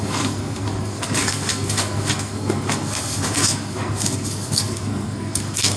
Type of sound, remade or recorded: remade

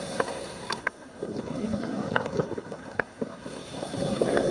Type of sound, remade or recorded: remade